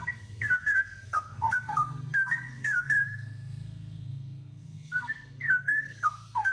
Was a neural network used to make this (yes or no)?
yes